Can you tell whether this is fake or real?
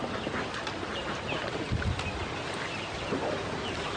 real